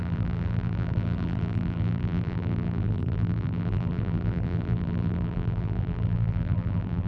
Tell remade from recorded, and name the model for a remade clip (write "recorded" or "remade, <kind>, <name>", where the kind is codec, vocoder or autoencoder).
remade, vocoder, BigVGAN v2